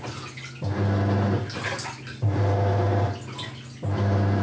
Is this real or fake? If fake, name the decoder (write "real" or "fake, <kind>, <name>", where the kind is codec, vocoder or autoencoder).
real